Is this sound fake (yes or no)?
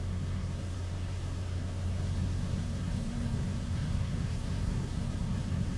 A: yes